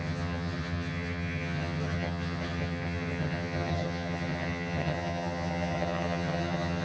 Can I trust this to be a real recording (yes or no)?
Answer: no